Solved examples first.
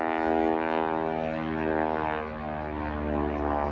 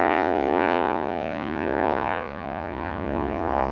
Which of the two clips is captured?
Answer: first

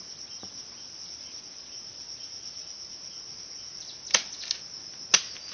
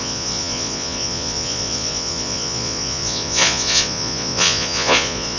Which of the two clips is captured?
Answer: first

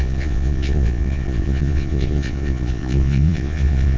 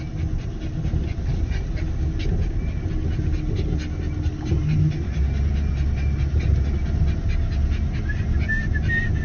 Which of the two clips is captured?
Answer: second